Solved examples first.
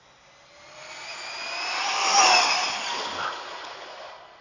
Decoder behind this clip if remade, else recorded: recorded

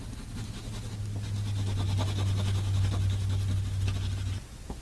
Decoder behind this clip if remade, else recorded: recorded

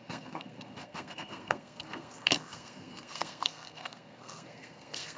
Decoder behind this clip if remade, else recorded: remade, codec, SNAC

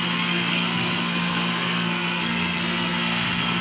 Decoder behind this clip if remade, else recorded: remade, codec, SNAC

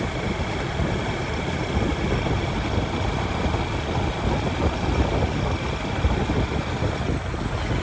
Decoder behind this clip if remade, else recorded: recorded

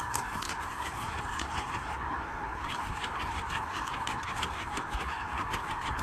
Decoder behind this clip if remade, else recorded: remade, codec, SNAC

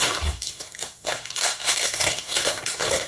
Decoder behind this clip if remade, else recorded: remade, codec, SNAC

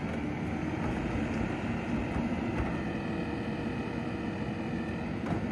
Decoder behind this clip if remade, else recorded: recorded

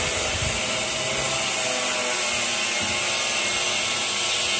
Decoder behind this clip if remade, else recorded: recorded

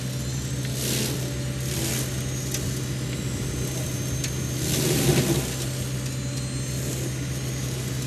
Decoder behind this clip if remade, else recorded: recorded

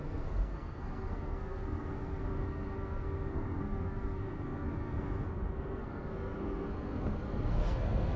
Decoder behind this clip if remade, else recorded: remade, codec, SNAC